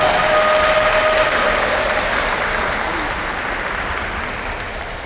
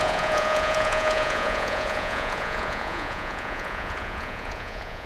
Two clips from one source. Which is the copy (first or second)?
second